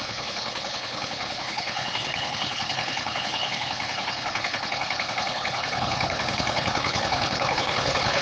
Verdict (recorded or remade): remade